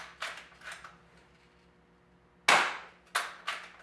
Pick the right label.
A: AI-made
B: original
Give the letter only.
B